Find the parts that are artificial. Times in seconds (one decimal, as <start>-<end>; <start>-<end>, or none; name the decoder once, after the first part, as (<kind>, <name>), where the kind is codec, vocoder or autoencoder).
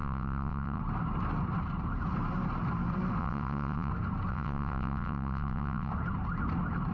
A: 0.0-0.8 (vocoder, WaveNeXt); 3.2-3.9; 4.3-5.9